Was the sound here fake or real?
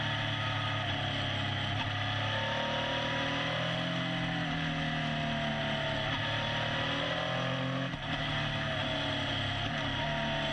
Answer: real